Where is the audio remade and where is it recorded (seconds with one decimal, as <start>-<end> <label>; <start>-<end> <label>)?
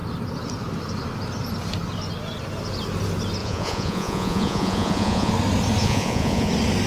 0.0-3.4 recorded; 3.4-5.3 remade; 5.3-5.8 recorded; 5.8-6.5 remade; 6.5-6.9 recorded